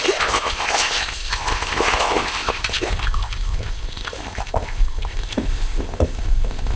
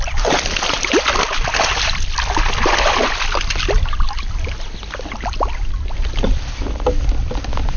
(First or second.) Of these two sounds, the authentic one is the second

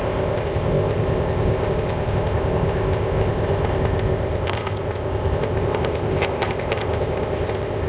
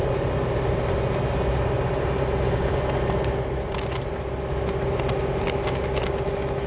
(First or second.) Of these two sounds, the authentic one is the second